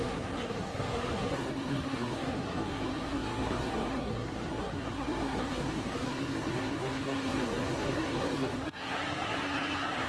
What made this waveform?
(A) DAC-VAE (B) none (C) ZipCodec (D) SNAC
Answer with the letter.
D